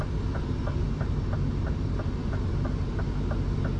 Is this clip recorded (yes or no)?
yes